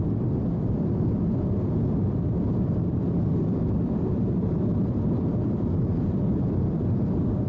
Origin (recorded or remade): remade